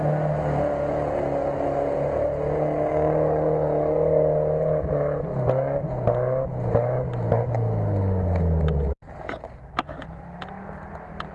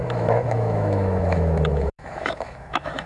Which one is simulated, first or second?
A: second